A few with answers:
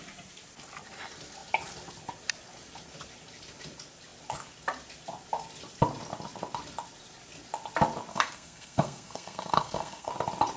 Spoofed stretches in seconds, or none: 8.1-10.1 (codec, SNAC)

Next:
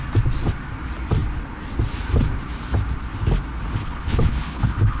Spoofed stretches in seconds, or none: 3.8-5.0 (codec, HILCodec)

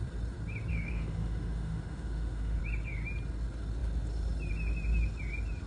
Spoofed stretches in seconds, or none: 0.7-2.6 (autoencoder, DAC-VAE)

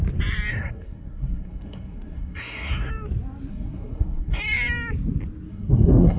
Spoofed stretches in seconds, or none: 0.5-2.9 (codec, SNAC); 3.5-4.4; 5.5-6.2